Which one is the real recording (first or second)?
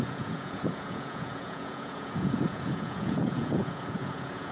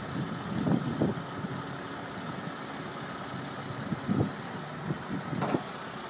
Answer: second